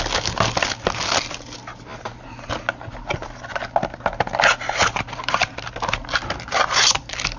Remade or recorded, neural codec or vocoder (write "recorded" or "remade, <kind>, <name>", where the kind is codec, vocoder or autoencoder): recorded